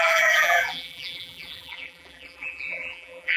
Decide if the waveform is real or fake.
fake